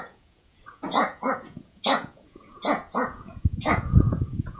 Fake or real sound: fake